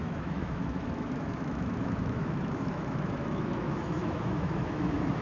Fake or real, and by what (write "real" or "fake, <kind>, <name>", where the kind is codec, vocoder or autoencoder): fake, autoencoder, DAC-VAE